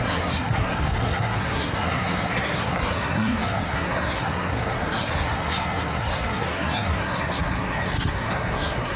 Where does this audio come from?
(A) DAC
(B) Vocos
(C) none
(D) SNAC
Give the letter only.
D